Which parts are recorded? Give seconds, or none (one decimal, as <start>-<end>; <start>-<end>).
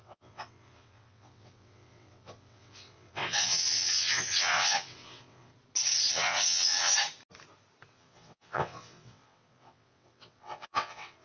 5.5-6.1; 6.9-7.9